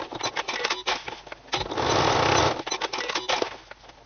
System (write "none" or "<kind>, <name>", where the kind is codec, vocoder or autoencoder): none